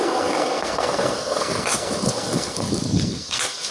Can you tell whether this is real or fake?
fake